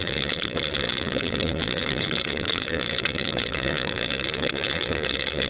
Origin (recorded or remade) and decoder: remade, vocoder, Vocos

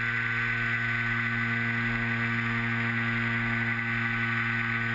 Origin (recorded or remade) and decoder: recorded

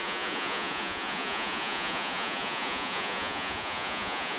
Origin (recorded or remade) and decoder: remade, vocoder, Vocos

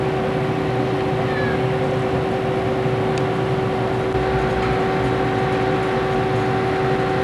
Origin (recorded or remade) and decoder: recorded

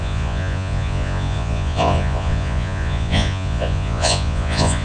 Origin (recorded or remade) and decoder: remade, vocoder, Vocos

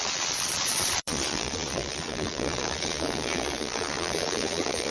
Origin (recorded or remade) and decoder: remade, vocoder, Vocos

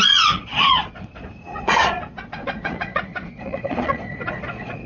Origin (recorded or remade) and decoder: remade, vocoder, Vocos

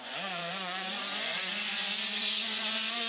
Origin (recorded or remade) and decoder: remade, vocoder, Vocos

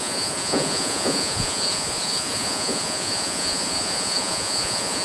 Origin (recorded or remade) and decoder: remade, vocoder, Vocos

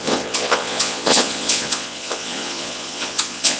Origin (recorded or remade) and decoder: remade, vocoder, Vocos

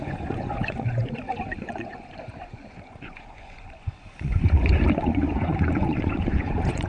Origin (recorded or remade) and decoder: remade, vocoder, Vocos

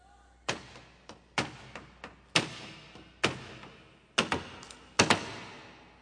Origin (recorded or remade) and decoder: recorded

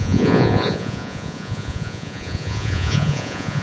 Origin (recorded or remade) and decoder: remade, vocoder, Vocos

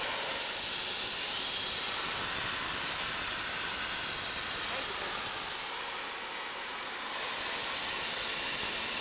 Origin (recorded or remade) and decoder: recorded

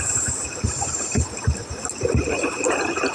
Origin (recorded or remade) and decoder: recorded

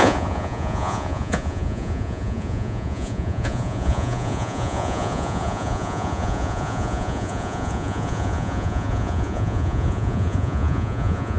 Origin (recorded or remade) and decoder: remade, vocoder, Vocos